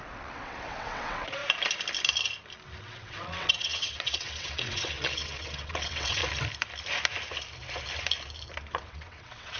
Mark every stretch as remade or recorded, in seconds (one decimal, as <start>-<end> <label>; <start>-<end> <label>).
0.0-1.4 remade; 1.4-2.8 recorded; 2.8-6.2 remade; 6.2-8.7 recorded; 8.7-9.6 remade